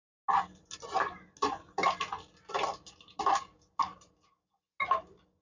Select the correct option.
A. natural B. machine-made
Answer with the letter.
A